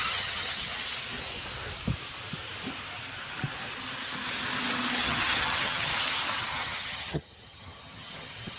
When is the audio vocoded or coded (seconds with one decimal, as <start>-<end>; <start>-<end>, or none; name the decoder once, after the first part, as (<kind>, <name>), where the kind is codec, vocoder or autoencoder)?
0.0-0.7 (vocoder, HiFi-GAN); 5.0-5.9; 6.4-8.6